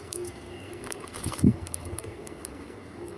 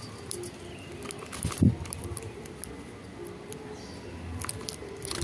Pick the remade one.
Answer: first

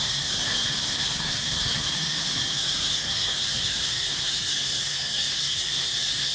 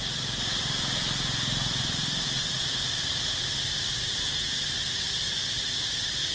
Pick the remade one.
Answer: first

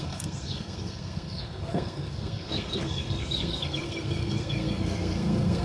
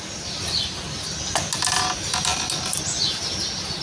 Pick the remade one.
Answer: first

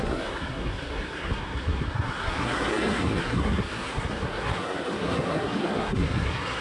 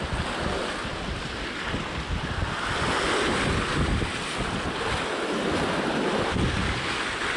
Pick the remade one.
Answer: first